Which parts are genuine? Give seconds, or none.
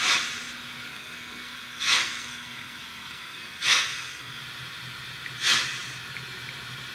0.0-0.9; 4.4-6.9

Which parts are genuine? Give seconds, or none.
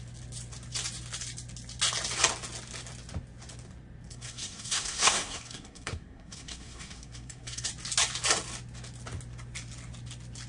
0.0-4.1; 7.7-10.5